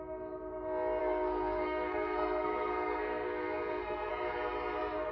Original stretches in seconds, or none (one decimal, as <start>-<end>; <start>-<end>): 0.0-1.0; 4.1-5.1